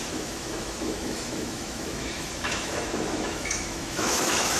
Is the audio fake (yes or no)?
yes